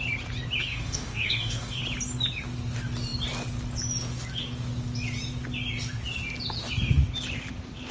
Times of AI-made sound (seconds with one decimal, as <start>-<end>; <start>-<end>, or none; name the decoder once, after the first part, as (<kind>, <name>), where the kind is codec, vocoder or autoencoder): 0.6-1.8 (codec, DAC)